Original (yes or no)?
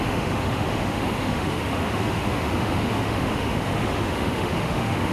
no